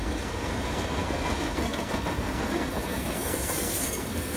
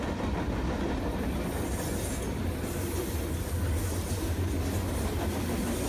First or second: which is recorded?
second